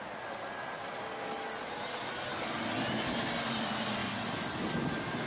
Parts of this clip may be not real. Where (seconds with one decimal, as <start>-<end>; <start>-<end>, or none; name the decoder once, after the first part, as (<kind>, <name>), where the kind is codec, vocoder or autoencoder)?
none

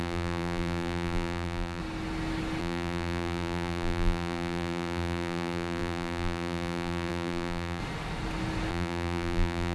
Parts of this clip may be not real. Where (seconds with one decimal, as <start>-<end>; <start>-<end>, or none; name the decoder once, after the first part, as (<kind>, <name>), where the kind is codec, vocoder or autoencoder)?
0.0-1.8 (vocoder, BigVGAN v2); 2.6-7.8; 8.7-9.7

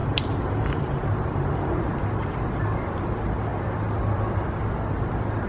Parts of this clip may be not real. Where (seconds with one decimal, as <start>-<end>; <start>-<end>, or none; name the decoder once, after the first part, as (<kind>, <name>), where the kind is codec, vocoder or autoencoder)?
0.0-1.8 (vocoder, BigVGAN v2)

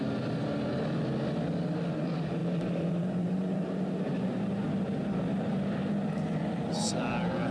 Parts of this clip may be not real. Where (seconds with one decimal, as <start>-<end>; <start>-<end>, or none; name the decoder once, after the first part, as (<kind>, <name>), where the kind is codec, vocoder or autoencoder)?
2.4-6.9 (vocoder, BigVGAN v2)

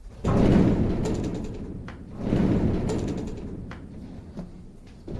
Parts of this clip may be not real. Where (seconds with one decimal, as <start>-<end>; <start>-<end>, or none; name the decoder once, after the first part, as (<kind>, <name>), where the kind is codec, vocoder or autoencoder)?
1.3-4.4 (vocoder, BigVGAN v2)

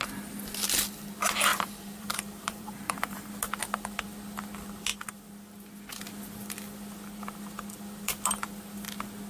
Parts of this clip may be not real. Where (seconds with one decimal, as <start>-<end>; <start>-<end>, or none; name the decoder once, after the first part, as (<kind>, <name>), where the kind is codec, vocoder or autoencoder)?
1.5-3.3 (vocoder, BigVGAN v2)

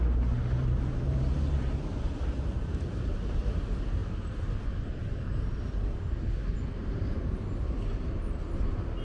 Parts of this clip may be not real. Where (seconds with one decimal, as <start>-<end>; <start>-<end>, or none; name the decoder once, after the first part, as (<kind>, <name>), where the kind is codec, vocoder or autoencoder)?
0.4-2.0 (vocoder, BigVGAN v2); 6.8-8.2

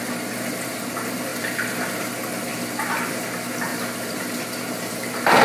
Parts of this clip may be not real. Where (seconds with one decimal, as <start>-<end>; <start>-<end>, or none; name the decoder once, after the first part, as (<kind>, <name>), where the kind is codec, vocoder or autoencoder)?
1.3-2.0 (vocoder, BigVGAN v2); 3.7-4.9